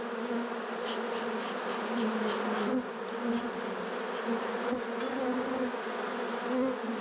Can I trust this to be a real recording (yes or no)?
yes